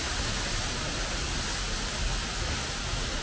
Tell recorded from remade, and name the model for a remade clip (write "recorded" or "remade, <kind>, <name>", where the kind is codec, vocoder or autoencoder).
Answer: recorded